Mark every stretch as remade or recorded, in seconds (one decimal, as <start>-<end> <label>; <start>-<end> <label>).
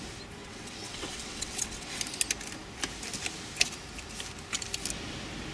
0.0-0.4 recorded; 0.4-2.0 remade; 2.0-5.5 recorded